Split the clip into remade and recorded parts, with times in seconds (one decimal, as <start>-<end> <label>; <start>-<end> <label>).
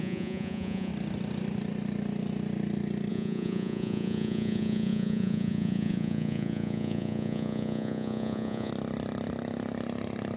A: 0.0-0.9 remade; 0.9-3.1 recorded; 3.1-8.7 remade; 8.7-10.4 recorded